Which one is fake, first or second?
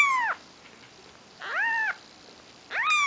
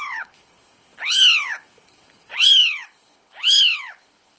second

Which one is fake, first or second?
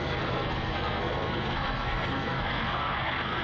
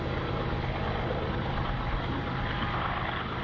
first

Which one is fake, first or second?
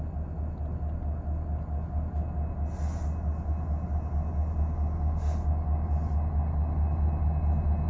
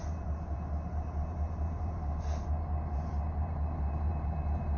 second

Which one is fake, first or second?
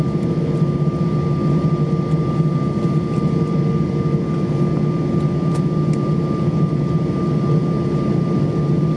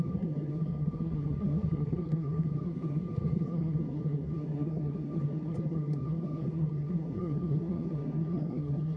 second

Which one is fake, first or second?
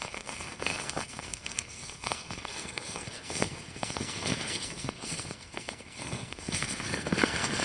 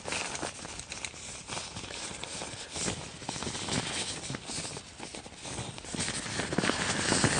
first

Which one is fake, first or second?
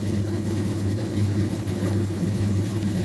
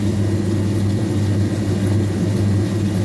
first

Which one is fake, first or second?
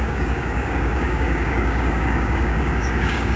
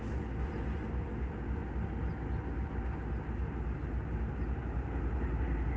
first